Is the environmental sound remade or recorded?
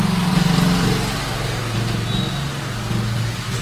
recorded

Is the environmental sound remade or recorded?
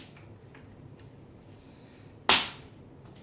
recorded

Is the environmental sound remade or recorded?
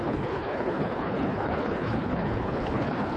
remade